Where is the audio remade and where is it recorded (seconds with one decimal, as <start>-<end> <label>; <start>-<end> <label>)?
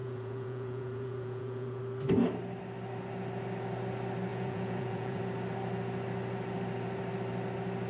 0.0-1.8 remade; 1.8-4.3 recorded; 4.3-5.2 remade; 5.2-7.9 recorded